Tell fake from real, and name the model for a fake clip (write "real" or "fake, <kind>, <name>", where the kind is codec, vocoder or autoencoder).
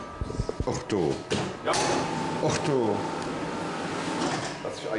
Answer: real